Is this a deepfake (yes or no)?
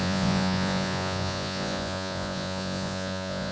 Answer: yes